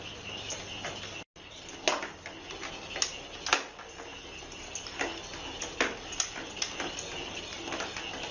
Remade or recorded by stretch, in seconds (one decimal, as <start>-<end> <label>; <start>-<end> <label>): 0.0-8.3 recorded